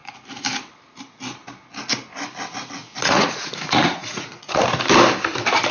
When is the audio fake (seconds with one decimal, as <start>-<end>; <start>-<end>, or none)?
2.8-4.6